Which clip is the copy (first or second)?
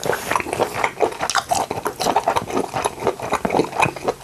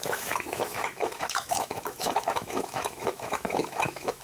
second